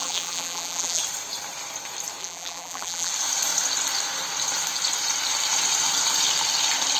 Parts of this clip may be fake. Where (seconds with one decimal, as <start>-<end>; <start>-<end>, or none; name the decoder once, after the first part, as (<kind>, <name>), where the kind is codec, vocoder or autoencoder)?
0.0-1.0 (vocoder, BigVGAN v2); 2.2-3.1